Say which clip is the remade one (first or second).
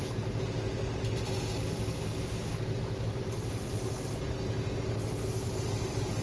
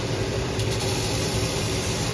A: second